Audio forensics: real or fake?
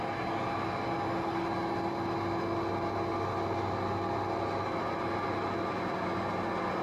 real